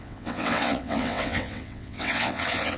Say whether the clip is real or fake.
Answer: fake